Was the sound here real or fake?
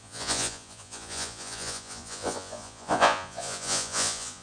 fake